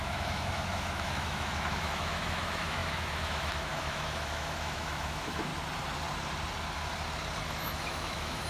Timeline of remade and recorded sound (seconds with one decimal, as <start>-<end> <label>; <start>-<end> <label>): 0.0-5.5 remade; 5.5-7.5 recorded; 7.5-8.5 remade